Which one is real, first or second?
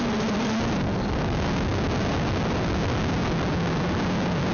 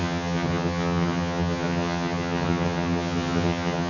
first